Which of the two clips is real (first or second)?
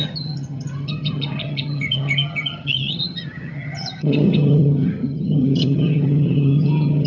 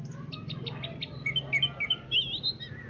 second